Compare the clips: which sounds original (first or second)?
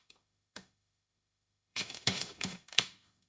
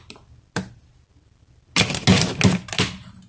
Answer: second